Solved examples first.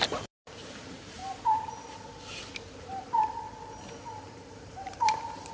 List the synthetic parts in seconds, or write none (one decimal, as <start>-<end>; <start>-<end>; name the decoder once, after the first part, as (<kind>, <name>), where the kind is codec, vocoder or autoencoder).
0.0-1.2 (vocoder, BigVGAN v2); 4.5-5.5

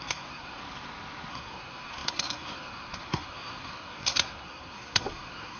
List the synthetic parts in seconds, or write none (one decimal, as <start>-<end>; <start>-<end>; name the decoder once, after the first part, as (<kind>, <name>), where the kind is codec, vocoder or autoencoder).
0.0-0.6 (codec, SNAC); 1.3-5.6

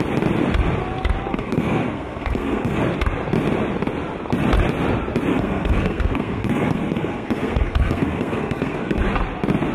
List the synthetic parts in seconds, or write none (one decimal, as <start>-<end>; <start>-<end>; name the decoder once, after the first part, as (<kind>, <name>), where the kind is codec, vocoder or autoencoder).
1.3-2.8 (codec, SNAC); 5.3-9.0

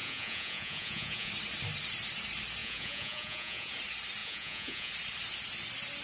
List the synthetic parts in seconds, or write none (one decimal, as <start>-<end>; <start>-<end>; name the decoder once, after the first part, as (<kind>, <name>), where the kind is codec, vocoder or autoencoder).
0.0-1.3 (vocoder, Vocos); 2.6-3.7; 4.2-4.9

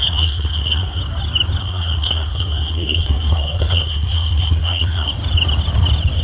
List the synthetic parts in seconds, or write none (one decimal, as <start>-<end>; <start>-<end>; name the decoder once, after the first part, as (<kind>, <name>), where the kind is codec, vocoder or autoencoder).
0.0-1.0 (codec, SNAC); 1.6-5.1

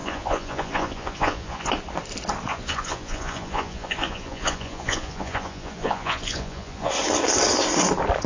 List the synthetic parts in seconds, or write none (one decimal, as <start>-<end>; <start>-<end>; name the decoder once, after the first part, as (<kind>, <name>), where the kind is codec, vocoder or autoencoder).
0.0-1.7 (vocoder, Vocos); 2.5-6.9

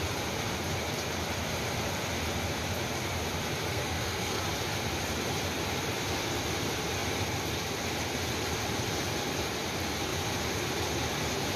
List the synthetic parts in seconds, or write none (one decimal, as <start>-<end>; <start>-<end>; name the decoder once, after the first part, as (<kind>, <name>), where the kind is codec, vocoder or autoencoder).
3.7-4.4 (codec, SNAC)

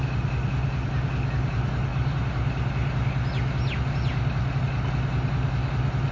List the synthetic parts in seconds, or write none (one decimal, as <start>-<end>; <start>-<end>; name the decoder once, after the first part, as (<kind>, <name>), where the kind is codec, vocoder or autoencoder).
none